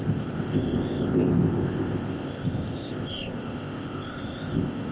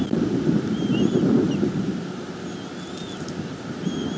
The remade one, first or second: first